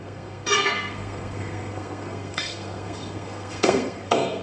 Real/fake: fake